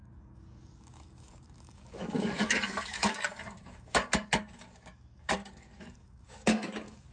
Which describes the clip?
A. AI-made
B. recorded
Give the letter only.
A